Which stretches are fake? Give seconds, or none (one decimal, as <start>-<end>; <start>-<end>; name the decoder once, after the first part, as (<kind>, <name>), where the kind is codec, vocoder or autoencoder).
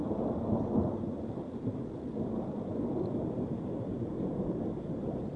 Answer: none